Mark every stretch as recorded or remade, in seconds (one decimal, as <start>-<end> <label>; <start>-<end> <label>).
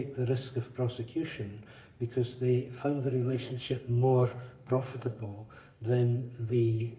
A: 0.0-2.8 recorded; 2.8-7.0 remade